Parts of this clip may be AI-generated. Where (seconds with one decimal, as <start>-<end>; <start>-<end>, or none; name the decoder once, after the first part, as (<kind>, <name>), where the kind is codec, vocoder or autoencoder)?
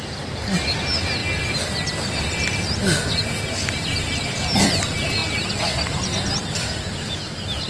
none